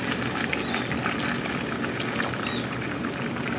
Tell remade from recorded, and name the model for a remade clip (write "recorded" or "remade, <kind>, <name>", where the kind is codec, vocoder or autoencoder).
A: recorded